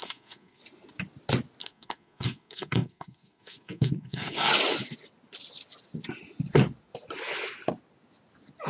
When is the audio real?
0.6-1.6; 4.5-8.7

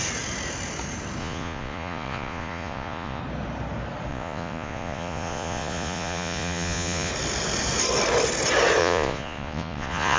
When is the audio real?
0.0-1.2; 3.2-4.1; 7.1-8.8

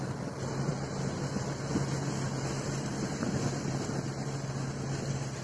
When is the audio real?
0.0-5.4

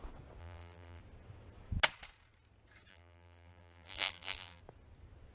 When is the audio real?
0.0-0.4; 1.0-2.9; 4.6-5.3